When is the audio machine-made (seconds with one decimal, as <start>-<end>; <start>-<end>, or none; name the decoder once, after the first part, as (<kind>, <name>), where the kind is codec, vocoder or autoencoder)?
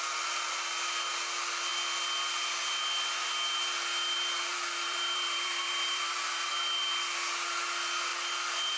4.5-6.5 (vocoder, BigVGAN v2)